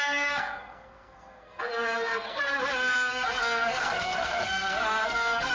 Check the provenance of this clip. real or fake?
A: fake